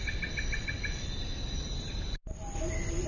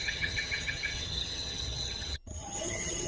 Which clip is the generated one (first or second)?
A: second